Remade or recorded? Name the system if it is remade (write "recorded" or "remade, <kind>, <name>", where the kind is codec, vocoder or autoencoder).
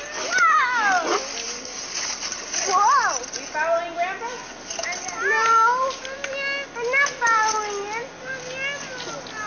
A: recorded